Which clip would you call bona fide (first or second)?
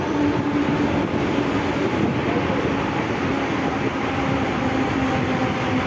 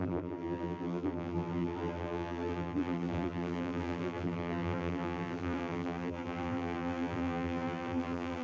first